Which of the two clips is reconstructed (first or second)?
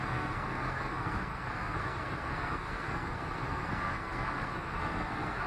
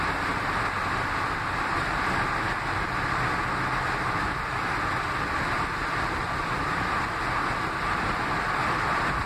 first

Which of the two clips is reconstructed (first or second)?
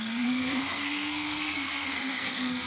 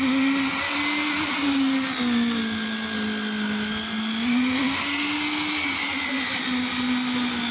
first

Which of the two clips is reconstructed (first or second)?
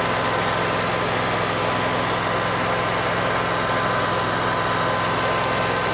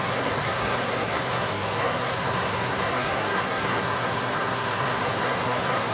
second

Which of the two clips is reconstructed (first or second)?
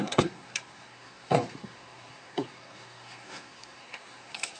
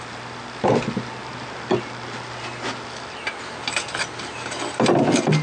first